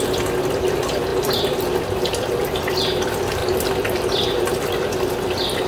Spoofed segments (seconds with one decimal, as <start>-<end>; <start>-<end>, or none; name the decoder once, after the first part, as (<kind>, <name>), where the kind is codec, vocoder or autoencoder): none